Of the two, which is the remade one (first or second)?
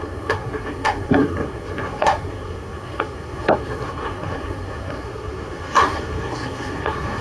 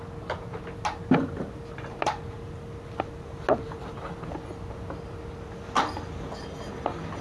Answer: first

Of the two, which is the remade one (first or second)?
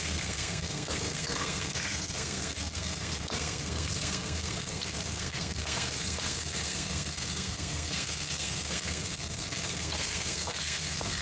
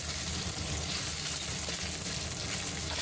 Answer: first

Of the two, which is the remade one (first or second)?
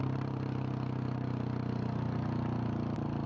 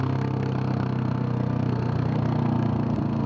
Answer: second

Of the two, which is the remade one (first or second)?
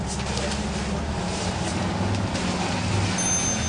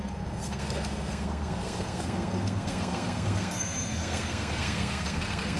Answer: second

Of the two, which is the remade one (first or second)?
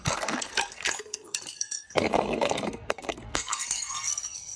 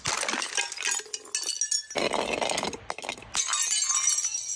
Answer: first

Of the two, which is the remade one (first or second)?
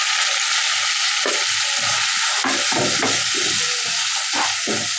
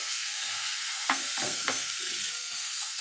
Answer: second